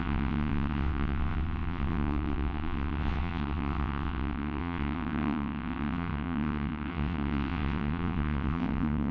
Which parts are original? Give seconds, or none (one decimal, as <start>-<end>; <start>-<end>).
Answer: none